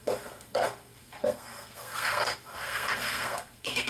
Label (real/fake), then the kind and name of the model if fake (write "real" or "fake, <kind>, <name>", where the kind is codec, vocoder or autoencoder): fake, codec, SNAC